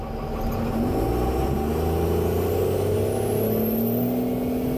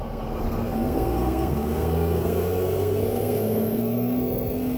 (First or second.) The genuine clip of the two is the first